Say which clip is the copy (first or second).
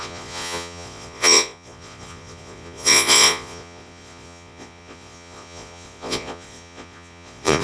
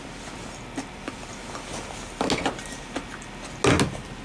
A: first